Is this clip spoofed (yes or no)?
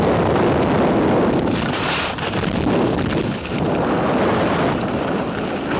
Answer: no